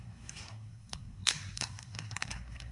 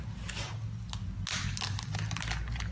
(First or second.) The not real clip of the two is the first